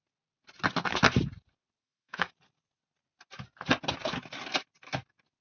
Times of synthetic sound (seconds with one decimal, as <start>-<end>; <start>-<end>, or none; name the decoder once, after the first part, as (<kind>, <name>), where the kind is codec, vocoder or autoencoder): 1.8-2.3 (autoencoder, DAC-VAE)